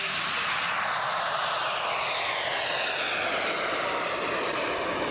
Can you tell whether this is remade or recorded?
recorded